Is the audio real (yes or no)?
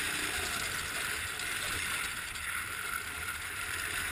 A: yes